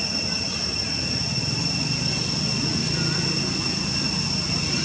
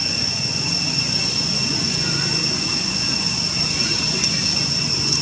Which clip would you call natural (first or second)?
first